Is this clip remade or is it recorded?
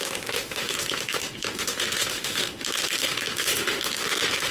remade